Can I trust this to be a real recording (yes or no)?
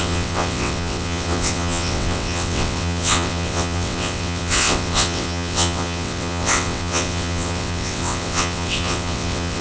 no